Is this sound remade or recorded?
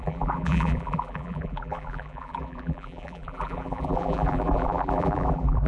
remade